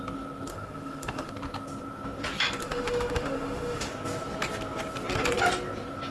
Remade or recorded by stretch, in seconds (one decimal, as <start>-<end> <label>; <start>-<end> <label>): 0.0-0.5 recorded; 0.5-1.3 remade; 1.3-2.6 recorded; 2.6-3.9 remade; 3.9-6.1 recorded